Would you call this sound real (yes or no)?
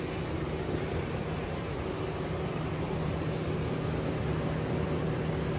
yes